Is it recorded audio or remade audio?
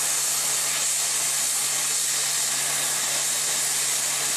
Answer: recorded